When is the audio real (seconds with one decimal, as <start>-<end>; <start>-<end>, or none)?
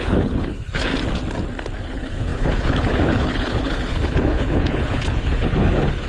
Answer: 0.9-1.8